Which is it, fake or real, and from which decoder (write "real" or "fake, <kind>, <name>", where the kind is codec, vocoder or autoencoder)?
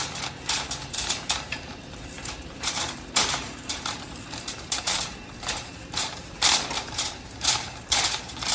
fake, vocoder, BigVGAN v2